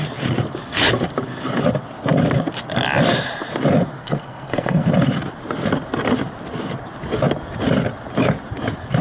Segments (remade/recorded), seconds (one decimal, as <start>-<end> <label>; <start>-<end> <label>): 0.0-4.0 recorded; 4.0-4.9 remade; 4.9-9.0 recorded